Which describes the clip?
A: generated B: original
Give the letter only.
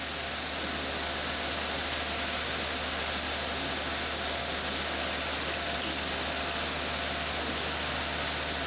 B